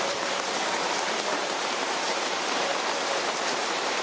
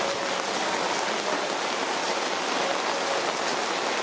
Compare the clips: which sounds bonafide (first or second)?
second